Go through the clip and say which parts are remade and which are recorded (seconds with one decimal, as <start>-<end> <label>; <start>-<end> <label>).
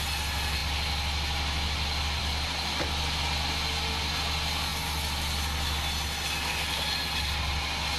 0.0-8.0 recorded